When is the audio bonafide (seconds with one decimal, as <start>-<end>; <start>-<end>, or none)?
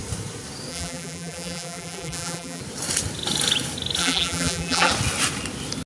0.0-0.7; 2.6-4.0; 4.9-5.9